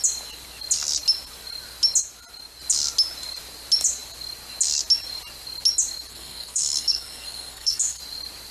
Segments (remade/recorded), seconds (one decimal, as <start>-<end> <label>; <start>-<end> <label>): 0.0-6.1 recorded; 6.1-8.0 remade; 8.0-8.5 recorded